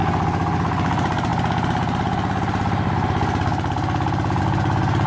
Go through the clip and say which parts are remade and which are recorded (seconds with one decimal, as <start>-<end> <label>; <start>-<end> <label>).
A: 0.0-5.1 recorded